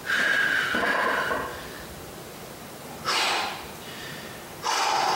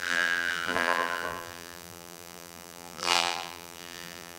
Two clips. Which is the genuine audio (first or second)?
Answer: first